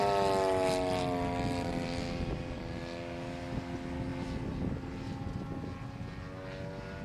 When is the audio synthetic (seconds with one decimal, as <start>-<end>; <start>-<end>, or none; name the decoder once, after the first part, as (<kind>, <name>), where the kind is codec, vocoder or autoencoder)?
none